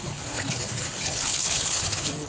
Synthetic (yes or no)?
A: yes